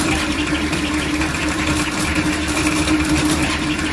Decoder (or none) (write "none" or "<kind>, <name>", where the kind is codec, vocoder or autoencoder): vocoder, BigVGAN v2